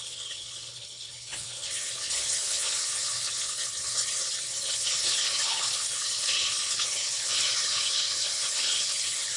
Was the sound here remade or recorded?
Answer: remade